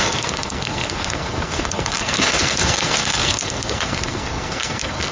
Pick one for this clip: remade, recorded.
remade